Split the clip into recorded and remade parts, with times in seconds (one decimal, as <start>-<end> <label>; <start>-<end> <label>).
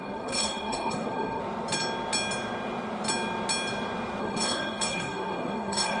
0.0-1.4 remade; 1.4-4.2 recorded; 4.2-6.0 remade